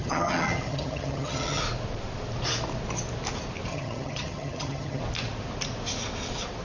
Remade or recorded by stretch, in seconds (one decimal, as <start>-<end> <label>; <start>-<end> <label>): 0.0-1.6 remade; 1.6-3.7 recorded; 3.7-5.0 remade; 5.0-6.6 recorded